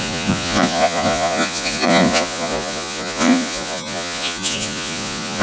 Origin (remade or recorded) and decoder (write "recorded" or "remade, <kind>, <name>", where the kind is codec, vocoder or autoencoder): remade, vocoder, Vocos